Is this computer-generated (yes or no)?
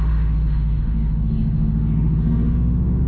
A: yes